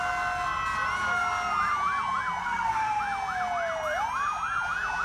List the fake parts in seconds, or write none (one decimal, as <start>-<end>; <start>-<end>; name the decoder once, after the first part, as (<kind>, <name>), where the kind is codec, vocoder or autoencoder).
2.4-3.0 (codec, SNAC)